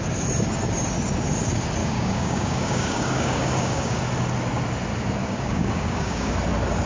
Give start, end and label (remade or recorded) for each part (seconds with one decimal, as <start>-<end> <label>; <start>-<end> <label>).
0.0-1.8 recorded; 1.8-4.0 remade; 4.0-5.2 recorded; 5.2-6.3 remade; 6.3-6.9 recorded